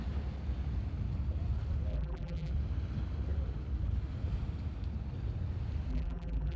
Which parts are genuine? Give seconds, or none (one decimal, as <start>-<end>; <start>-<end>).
0.0-1.9; 2.5-5.9